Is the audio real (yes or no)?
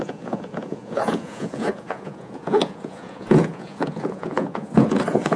no